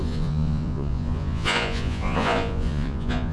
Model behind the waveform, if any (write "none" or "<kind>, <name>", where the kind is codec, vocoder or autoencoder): vocoder, Vocos